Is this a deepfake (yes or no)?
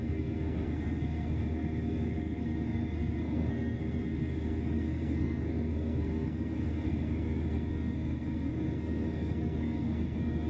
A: yes